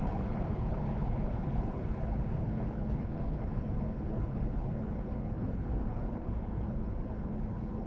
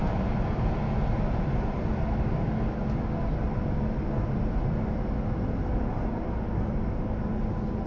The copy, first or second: first